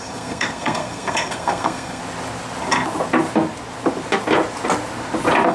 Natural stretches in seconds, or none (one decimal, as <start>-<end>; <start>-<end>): 2.0-5.5